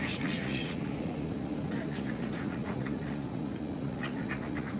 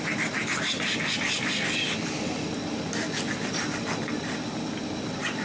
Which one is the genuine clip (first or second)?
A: second